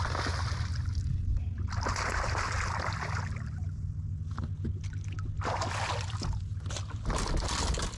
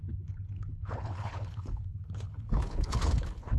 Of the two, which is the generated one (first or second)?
second